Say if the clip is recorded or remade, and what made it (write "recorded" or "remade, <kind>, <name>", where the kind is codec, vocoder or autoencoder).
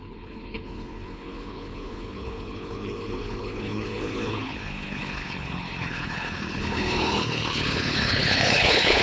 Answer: remade, codec, HILCodec